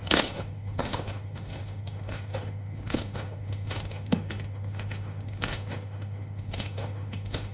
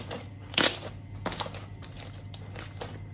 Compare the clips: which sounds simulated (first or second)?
first